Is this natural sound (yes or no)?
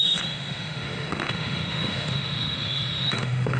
no